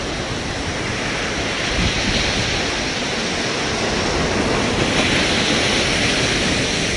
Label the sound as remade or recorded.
recorded